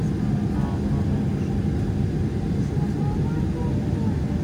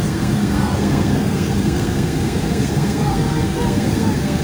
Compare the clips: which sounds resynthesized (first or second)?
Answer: second